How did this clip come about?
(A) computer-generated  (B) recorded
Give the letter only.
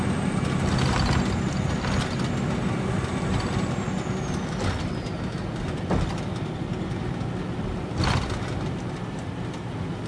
B